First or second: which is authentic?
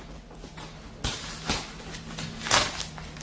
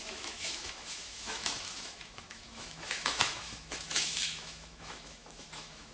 first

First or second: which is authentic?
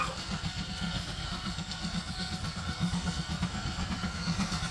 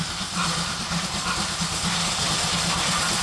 second